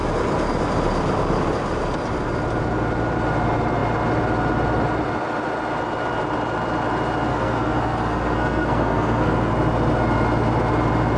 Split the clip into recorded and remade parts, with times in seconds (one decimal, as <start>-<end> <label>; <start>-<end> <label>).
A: 0.0-7.3 recorded; 7.3-9.5 remade; 9.5-11.2 recorded